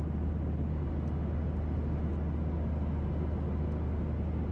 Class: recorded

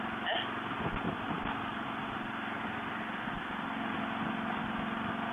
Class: recorded